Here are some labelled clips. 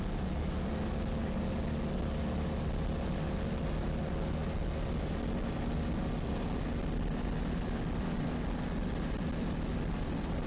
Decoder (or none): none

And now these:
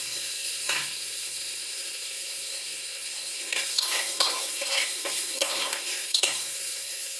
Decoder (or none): codec, SNAC